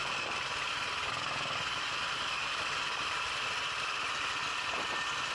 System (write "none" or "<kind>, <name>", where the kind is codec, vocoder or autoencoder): none